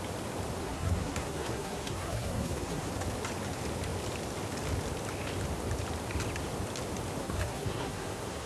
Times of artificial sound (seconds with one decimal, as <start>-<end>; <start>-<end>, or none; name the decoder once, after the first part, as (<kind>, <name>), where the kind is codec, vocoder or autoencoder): 0.6-2.9 (codec, SNAC); 7.2-8.5